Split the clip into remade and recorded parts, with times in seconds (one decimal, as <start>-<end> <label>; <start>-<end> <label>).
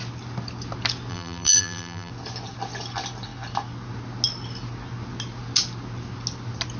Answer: 0.0-1.1 recorded; 1.1-2.1 remade; 2.1-6.8 recorded